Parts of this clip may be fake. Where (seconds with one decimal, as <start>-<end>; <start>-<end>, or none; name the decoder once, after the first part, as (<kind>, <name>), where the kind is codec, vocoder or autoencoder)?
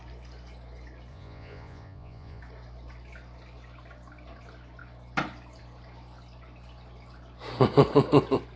1.1-2.4 (vocoder, Vocos)